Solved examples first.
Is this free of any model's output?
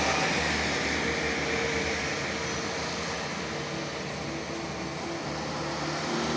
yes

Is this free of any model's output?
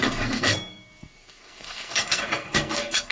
no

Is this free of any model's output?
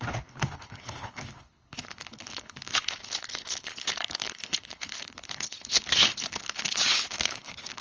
no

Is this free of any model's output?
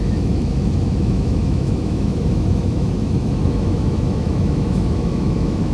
no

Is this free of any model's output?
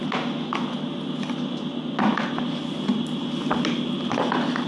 yes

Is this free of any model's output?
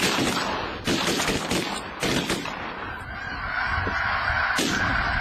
yes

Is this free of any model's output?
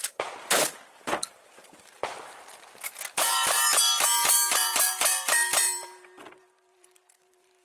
no